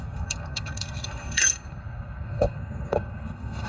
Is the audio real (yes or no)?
no